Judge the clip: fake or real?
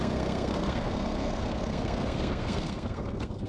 fake